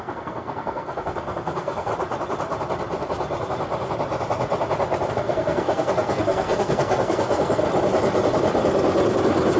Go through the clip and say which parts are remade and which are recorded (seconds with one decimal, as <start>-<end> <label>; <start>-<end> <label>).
0.0-1.9 remade; 1.9-5.1 recorded; 5.1-7.6 remade; 7.6-9.6 recorded